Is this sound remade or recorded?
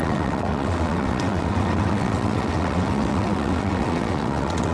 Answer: remade